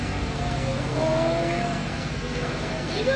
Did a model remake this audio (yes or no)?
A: yes